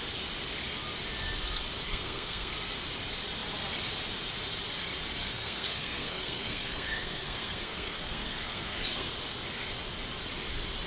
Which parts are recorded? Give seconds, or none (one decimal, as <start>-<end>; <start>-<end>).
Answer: 0.0-1.9; 2.5-5.2; 9.1-10.9

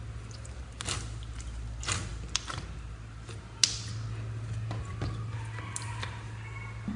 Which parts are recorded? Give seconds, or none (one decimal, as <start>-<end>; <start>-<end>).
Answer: 0.0-7.0

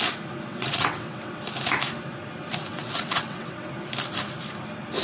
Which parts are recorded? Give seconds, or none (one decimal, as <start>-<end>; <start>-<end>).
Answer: 0.0-0.5; 1.4-2.7; 3.7-5.0